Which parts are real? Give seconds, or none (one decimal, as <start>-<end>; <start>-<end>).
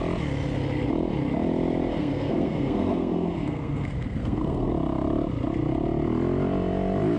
0.0-2.0; 4.7-7.2